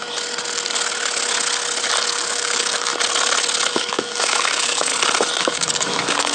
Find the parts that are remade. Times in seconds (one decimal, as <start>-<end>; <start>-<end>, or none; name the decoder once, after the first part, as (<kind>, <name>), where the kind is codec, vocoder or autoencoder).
2.1-2.9 (codec, DAC); 3.7-4.9; 5.4-6.3